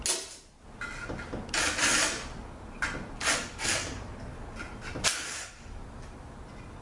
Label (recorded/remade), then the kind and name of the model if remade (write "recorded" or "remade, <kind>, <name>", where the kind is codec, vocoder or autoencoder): recorded